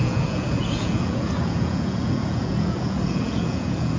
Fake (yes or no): yes